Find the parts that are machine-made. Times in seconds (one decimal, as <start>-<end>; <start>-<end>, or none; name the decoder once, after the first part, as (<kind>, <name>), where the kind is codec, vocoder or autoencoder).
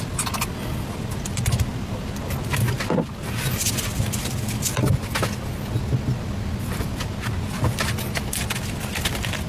none